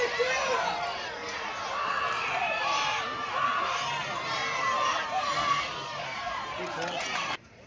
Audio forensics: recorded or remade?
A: remade